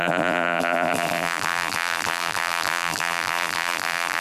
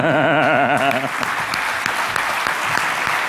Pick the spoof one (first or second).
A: first